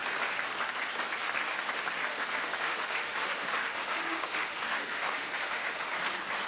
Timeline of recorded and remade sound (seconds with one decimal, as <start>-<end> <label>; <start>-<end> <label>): 0.0-2.1 recorded; 2.1-5.9 remade; 5.9-6.5 recorded